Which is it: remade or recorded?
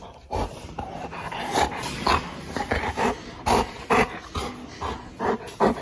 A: recorded